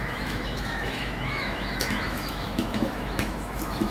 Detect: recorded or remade remade